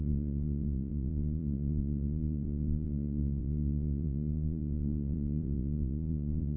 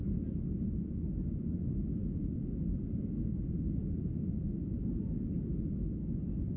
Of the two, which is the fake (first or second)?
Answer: first